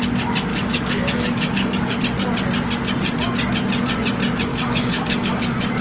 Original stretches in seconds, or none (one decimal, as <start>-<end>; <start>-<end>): 0.0-0.5; 2.0-4.5